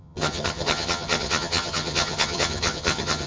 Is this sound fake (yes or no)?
yes